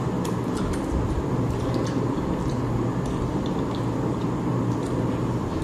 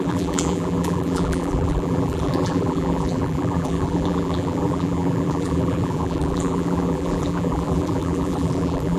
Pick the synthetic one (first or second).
second